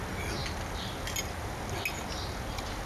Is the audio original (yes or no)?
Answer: yes